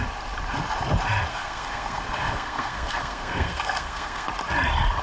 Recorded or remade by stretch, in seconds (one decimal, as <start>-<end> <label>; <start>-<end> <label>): 0.0-1.3 recorded; 1.3-4.3 remade; 4.3-5.0 recorded